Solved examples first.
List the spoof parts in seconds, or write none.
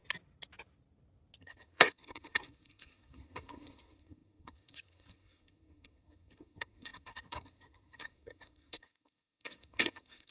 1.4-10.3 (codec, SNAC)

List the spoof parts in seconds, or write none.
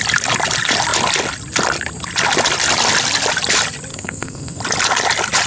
3.9-4.6 (codec, SNAC)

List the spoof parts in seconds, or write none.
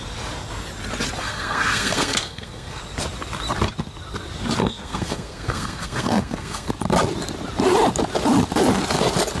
1.2-2.8 (codec, SNAC); 4.6-6.7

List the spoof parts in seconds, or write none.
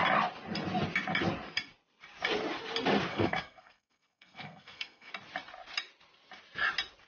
3.1-5.1 (codec, SNAC)